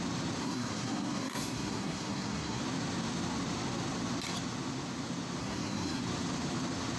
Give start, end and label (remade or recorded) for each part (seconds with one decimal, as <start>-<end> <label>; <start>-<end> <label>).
0.0-0.4 recorded; 0.4-2.6 remade; 2.6-5.4 recorded; 5.4-6.0 remade; 6.0-7.0 recorded